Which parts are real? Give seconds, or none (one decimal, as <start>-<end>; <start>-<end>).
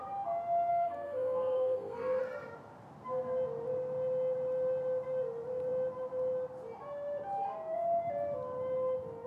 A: 0.0-0.7; 2.2-9.3